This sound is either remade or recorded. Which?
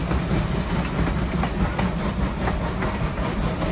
recorded